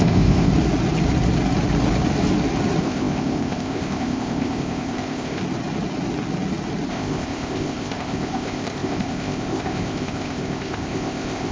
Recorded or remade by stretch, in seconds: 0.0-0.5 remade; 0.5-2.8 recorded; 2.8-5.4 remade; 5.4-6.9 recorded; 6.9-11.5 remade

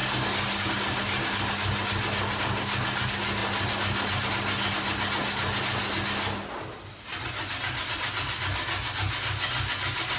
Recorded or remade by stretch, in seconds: 0.0-10.2 recorded

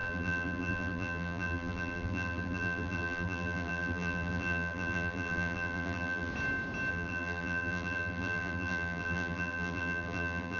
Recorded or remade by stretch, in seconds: 0.0-6.3 remade; 6.3-6.9 recorded; 6.9-10.6 remade